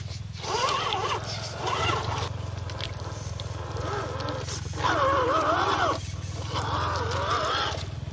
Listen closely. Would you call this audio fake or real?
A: real